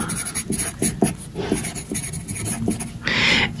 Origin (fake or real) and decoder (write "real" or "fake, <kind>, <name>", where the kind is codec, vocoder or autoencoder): real